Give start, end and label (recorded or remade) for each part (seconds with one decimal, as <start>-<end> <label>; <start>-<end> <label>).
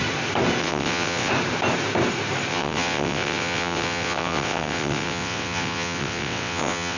0.0-0.6 recorded; 0.6-1.3 remade; 1.3-2.5 recorded; 2.5-7.0 remade